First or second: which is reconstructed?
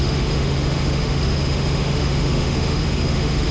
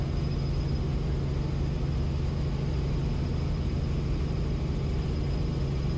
first